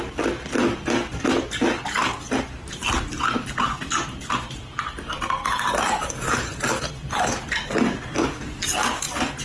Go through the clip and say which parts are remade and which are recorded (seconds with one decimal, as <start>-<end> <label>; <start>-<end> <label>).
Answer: 0.0-9.4 recorded